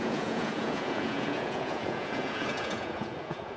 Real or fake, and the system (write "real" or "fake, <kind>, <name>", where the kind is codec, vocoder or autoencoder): fake, vocoder, Vocos